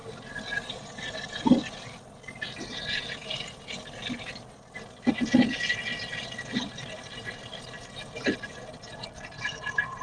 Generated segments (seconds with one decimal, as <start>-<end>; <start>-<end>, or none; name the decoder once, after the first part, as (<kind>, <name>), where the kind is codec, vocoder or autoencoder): none